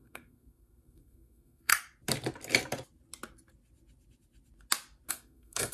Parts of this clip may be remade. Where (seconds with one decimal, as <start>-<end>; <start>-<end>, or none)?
0.0-1.7; 5.1-5.7